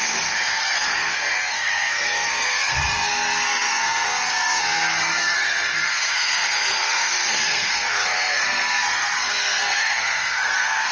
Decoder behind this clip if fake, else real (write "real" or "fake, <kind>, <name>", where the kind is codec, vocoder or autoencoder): fake, codec, SNAC